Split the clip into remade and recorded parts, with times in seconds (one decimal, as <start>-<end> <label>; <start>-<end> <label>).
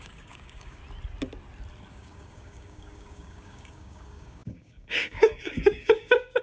0.0-0.8 remade; 0.8-1.9 recorded; 1.9-6.4 remade